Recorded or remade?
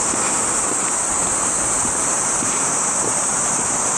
recorded